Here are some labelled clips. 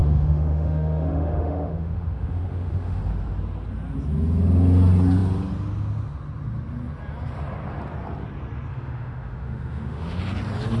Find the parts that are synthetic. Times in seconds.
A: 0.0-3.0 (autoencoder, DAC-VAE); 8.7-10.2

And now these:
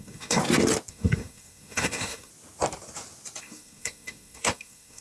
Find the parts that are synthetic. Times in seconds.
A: 0.0-0.4 (codec, SNAC); 0.9-2.3; 3.4-5.0

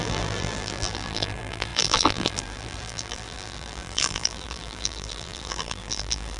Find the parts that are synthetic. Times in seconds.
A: 0.0-6.4 (vocoder, BigVGAN v2)

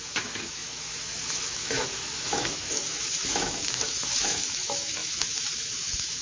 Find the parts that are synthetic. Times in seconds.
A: 0.0-6.2 (autoencoder, DAC-VAE)

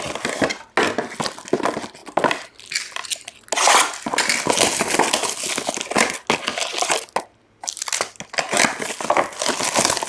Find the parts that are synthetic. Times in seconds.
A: none

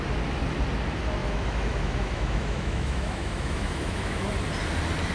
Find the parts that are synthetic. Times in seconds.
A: 1.2-4.3 (autoencoder, DAC-VAE)